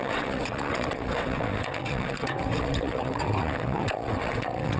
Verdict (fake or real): fake